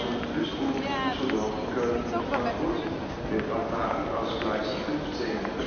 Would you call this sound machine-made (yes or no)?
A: no